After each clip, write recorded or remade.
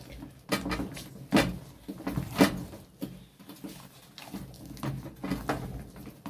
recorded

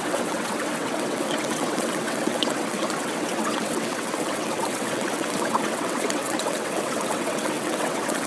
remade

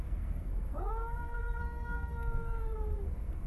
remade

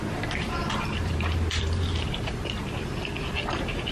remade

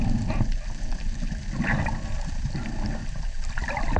recorded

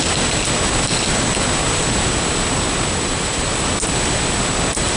recorded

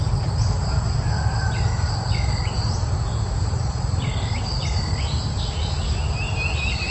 recorded